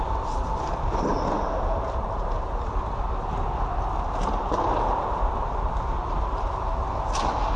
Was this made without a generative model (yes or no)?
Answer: yes